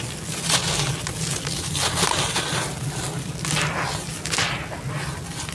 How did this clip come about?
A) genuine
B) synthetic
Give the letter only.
A